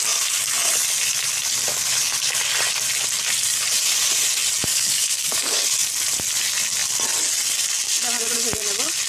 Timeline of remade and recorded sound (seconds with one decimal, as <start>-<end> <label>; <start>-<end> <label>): 0.0-1.7 recorded; 1.7-2.5 remade; 2.5-4.7 recorded; 4.7-5.9 remade; 5.9-9.1 recorded